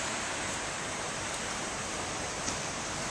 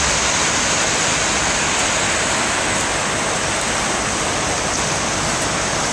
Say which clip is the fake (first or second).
first